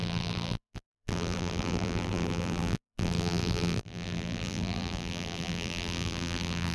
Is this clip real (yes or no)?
no